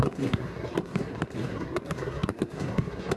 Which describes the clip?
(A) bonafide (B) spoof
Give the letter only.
B